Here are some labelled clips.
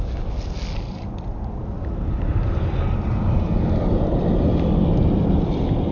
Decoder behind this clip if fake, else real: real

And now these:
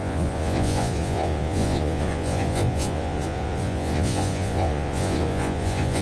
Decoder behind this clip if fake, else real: fake, vocoder, Vocos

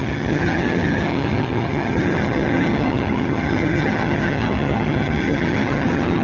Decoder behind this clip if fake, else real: fake, vocoder, HiFi-GAN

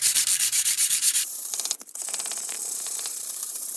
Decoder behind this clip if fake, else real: fake, vocoder, BigVGAN v2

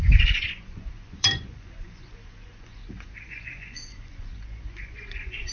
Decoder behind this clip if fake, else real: fake, vocoder, Vocos